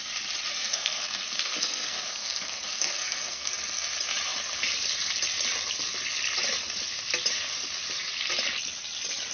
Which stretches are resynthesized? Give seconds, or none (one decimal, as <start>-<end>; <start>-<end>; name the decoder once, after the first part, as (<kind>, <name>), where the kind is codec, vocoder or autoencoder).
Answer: 0.5-3.5 (codec, SNAC)

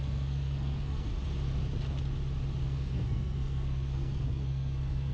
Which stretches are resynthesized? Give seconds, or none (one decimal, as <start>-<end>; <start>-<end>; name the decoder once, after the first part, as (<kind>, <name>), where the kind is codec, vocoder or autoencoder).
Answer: 0.0-1.1 (codec, SNAC); 2.6-5.1

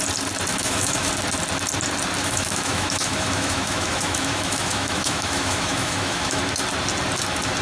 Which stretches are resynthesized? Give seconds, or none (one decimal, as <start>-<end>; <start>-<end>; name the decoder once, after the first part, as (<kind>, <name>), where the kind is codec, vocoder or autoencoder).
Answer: 0.5-1.1 (autoencoder, DAC-VAE); 2.2-6.4

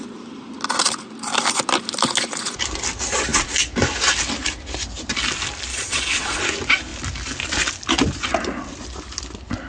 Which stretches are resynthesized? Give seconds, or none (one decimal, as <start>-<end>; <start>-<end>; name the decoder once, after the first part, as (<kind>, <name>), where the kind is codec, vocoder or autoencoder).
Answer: 5.7-6.4 (vocoder, Vocos)

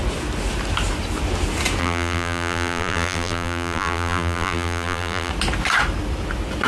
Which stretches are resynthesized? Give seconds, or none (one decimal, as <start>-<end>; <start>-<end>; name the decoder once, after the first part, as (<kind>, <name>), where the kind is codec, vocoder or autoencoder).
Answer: 1.8-5.3 (vocoder, BigVGAN v2)

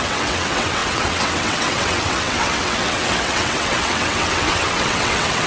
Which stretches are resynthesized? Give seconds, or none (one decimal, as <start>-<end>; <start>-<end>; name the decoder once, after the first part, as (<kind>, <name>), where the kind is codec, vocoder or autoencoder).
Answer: 0.0-5.5 (vocoder, WaveNeXt)

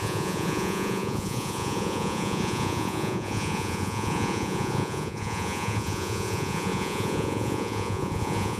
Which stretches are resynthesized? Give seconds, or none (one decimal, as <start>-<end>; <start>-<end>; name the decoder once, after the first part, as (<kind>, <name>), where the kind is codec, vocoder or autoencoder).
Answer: 0.0-8.6 (vocoder, Vocos)